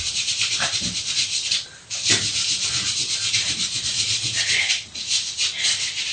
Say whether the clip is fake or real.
real